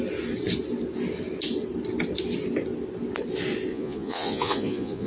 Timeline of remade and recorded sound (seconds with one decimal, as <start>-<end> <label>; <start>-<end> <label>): 0.0-3.7 recorded; 3.7-5.1 remade